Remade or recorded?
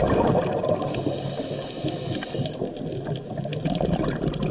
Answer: recorded